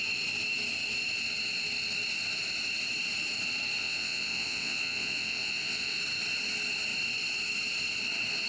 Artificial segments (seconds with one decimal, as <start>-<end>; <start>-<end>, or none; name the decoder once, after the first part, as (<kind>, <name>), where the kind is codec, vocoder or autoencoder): 3.8-6.0 (vocoder, WaveNeXt)